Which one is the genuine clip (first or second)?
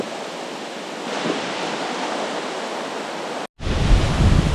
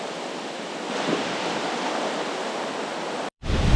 first